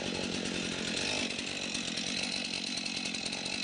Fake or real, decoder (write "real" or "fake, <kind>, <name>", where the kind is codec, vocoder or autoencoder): real